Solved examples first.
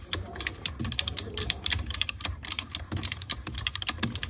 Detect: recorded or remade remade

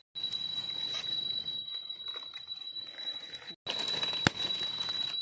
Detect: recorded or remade recorded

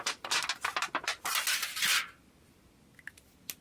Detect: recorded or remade recorded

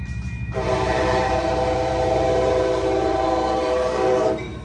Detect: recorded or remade remade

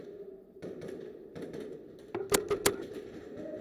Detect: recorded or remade recorded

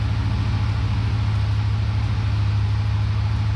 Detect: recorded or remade recorded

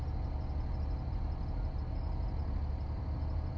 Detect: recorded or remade recorded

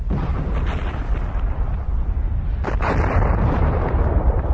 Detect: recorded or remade remade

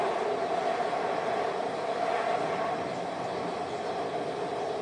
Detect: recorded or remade recorded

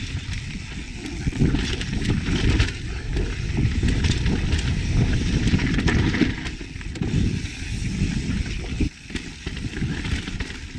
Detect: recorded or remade recorded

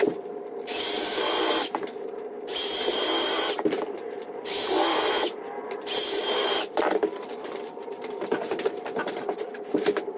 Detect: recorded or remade remade